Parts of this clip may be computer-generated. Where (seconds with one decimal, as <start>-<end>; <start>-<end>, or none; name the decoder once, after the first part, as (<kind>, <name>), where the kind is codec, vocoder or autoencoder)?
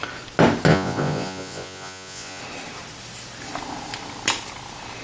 0.7-2.4 (vocoder, Vocos)